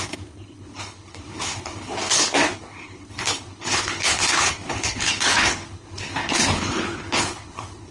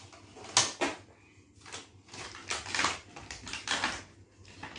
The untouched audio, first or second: second